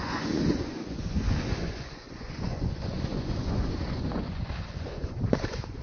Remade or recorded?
remade